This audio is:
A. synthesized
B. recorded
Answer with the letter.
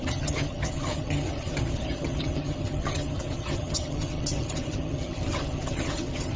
A